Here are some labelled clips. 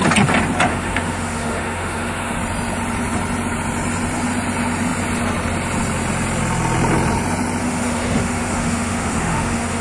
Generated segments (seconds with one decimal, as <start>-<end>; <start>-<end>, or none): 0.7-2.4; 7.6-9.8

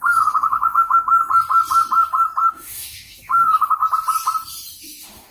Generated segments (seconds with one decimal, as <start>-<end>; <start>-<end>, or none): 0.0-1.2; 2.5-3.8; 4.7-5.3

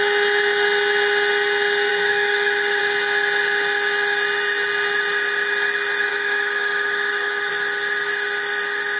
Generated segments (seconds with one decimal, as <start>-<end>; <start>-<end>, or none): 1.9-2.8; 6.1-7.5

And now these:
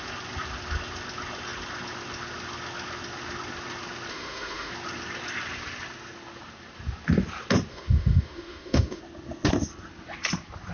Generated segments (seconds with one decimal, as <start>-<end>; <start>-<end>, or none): 4.1-4.7; 7.7-9.0

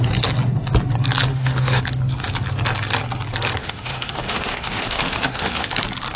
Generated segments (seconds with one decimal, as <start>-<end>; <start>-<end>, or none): 1.3-1.8; 3.6-5.7